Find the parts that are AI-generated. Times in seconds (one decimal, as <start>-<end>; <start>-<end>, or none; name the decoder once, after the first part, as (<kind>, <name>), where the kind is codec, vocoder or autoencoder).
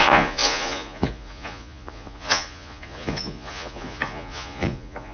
0.0-5.1 (vocoder, Vocos)